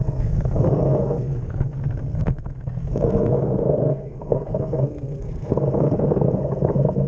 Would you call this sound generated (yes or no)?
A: yes